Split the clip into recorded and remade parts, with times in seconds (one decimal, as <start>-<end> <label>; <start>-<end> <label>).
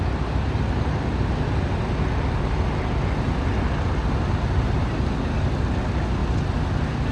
0.0-7.1 recorded